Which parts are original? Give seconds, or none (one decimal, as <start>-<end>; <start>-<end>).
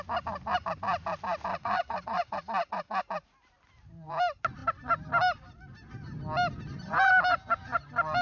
0.0-1.5; 3.0-8.2